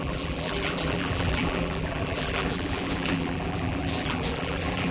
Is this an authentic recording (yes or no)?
no